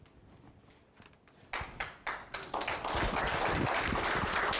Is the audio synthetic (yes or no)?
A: no